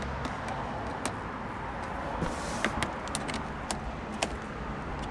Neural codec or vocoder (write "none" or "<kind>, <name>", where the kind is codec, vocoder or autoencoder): none